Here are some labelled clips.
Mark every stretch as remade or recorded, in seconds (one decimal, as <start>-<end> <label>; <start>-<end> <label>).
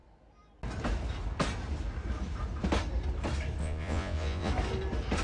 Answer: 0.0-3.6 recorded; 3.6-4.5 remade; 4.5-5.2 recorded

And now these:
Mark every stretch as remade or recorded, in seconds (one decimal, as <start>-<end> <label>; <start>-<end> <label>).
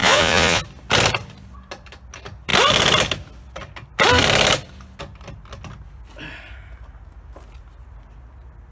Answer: 0.0-0.6 remade; 0.6-8.7 recorded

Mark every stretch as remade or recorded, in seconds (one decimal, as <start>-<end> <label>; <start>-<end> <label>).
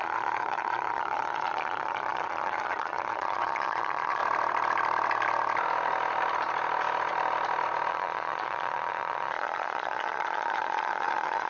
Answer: 0.0-4.2 remade; 4.2-7.9 recorded; 7.9-11.5 remade